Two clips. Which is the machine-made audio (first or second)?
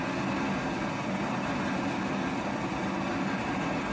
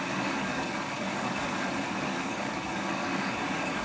second